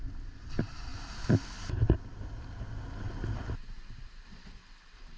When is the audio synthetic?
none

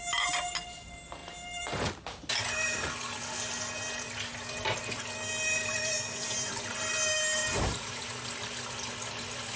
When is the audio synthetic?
7.4-8.0 (vocoder, BigVGAN v2)

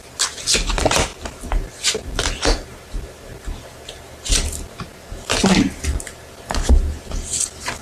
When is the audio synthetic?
none

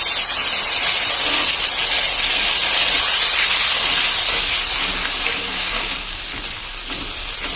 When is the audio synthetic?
5.3-6.2 (codec, DAC)

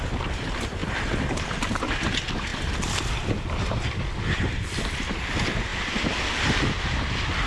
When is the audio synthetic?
0.8-1.7 (vocoder, BigVGAN v2); 2.5-4.9; 5.7-6.2